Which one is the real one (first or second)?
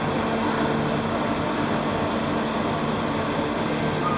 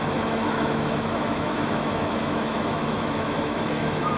first